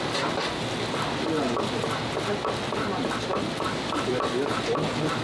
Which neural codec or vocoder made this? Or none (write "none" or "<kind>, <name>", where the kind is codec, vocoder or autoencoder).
none